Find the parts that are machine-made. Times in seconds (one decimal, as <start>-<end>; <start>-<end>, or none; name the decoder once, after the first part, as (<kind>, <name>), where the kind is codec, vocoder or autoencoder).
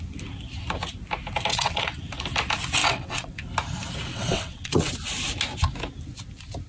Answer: 1.5-2.0 (vocoder, WaveNeXt); 2.8-3.4; 4.1-4.9